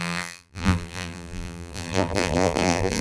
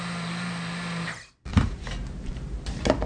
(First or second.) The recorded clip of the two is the second